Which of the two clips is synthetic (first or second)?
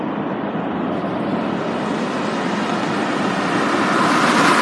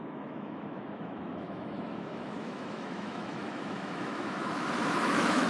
second